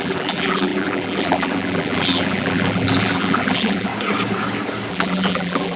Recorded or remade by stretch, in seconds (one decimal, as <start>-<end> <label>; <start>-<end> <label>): 0.0-3.9 remade; 3.9-4.9 recorded; 4.9-5.8 remade